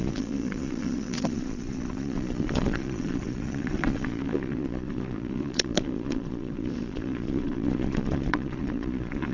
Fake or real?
fake